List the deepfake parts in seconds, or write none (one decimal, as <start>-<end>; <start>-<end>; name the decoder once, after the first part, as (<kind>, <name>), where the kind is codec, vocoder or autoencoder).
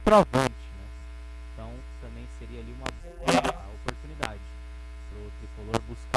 3.0-3.6 (vocoder, BigVGAN v2)